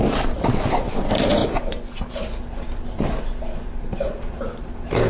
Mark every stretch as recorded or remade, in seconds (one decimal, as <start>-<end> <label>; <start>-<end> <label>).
0.0-5.1 recorded